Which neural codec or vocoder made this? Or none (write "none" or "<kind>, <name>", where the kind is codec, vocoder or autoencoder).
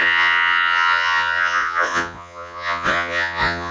vocoder, Vocos